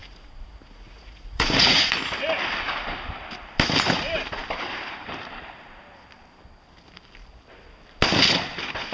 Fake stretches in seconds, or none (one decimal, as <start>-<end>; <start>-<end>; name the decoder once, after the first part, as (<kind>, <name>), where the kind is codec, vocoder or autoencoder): 0.0-1.9 (vocoder, Vocos)